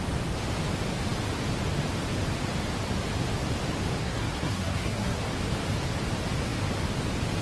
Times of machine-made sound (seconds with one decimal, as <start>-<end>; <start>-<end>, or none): 4.0-5.2